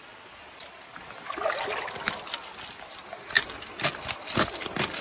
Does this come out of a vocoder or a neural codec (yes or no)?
no